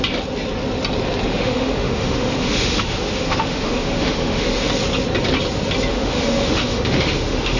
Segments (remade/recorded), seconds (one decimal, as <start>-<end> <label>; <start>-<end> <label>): 0.0-1.3 recorded; 1.3-4.7 remade; 4.7-5.9 recorded; 5.9-7.6 remade